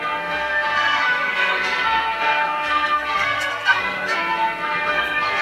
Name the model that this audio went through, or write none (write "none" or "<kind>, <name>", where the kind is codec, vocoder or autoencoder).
codec, SNAC